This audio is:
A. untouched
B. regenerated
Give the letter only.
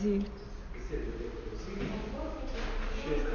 A